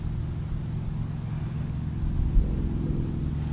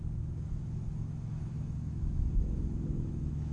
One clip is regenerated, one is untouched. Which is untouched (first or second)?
first